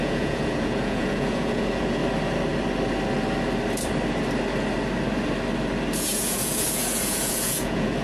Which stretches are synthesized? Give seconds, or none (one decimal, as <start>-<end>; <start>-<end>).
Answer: 0.0-2.0; 6.0-8.0